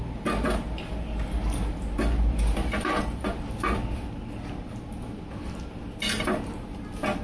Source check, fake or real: real